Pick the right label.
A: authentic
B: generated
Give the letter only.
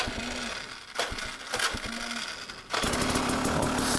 A